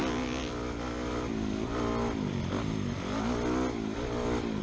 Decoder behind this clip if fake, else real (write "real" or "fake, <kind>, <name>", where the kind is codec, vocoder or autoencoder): real